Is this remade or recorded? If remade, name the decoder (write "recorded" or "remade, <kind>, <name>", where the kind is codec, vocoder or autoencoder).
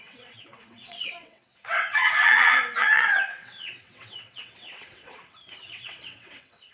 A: remade, vocoder, WaveNeXt